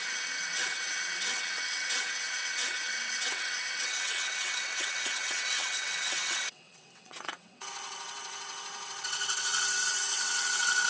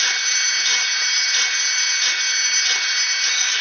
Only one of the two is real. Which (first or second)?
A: second